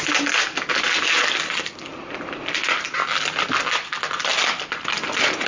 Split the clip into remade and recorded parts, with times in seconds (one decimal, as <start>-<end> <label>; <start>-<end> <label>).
0.0-5.5 recorded